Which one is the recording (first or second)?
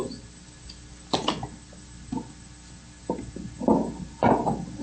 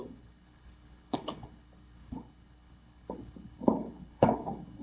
first